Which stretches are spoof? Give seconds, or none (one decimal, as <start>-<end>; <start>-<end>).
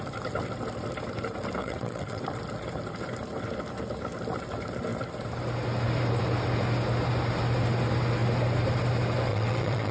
1.6-2.2; 9.3-9.9